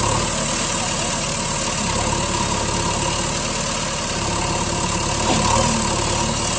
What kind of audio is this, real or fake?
real